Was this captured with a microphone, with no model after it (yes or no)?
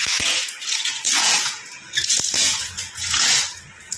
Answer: no